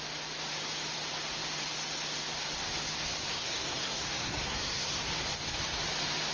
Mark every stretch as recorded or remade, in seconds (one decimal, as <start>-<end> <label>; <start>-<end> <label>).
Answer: 0.0-3.3 recorded; 3.3-5.0 remade; 5.0-6.3 recorded